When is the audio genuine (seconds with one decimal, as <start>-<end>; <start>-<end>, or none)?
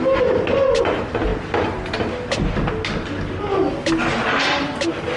0.0-5.2